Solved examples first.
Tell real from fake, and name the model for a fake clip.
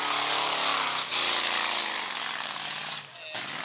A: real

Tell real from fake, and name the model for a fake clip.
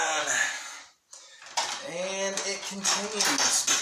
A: real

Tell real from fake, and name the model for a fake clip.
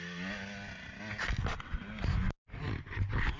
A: real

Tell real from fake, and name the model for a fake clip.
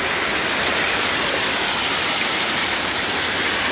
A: real